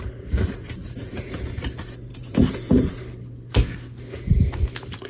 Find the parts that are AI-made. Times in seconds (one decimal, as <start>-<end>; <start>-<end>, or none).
2.1-2.9

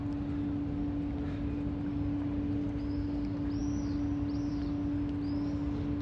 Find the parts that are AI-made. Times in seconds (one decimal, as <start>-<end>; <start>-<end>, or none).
none